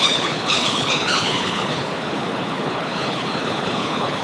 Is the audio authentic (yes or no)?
no